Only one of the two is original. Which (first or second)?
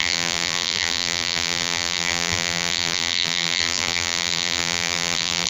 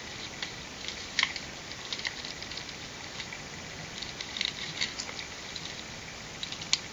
second